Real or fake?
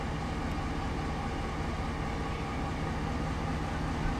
real